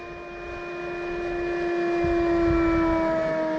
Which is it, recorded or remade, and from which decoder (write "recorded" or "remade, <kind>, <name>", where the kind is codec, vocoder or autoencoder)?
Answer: recorded